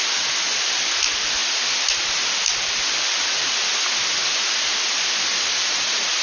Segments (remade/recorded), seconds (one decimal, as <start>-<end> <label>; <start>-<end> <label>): 0.0-5.3 recorded; 5.3-6.2 remade